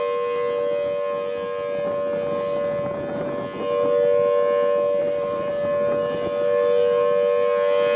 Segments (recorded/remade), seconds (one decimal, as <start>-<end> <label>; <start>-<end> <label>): 0.0-5.0 recorded; 5.0-5.5 remade; 5.5-8.0 recorded